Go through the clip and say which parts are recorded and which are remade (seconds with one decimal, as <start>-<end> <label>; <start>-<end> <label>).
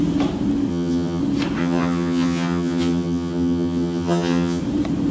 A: 0.0-0.7 recorded; 0.7-1.2 remade; 1.2-1.6 recorded; 1.6-4.6 remade; 4.6-5.1 recorded